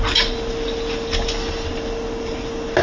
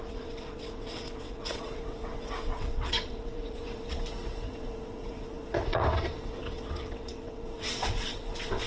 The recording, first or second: first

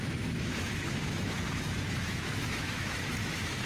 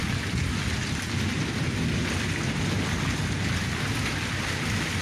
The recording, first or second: second